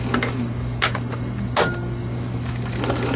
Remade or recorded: recorded